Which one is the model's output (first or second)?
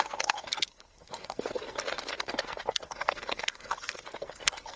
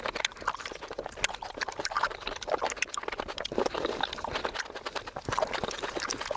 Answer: first